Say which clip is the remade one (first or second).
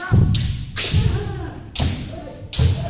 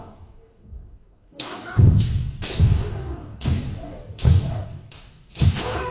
second